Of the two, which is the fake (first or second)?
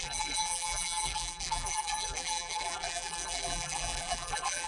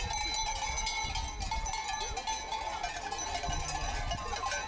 first